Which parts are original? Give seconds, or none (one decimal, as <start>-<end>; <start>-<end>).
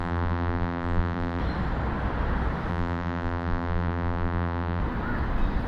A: 1.4-2.7; 4.8-5.7